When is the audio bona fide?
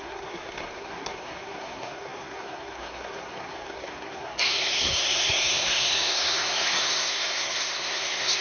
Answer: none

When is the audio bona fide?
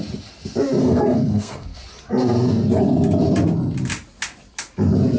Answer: 0.0-0.8; 1.8-5.2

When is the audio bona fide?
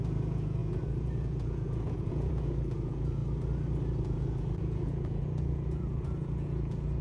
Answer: 3.2-4.0